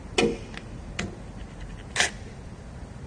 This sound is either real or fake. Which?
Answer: real